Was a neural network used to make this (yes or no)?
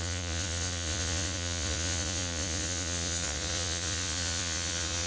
yes